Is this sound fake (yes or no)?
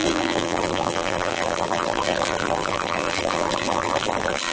yes